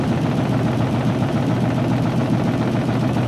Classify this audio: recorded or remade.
recorded